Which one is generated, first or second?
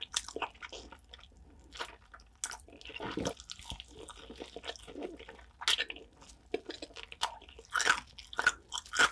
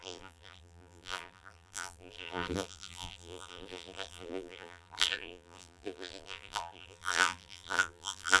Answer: second